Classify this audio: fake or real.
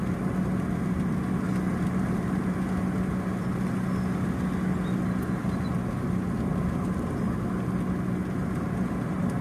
real